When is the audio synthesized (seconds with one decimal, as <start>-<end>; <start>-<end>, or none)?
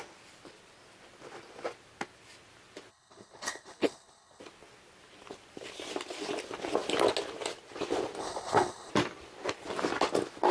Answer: 2.9-4.4; 8.2-8.9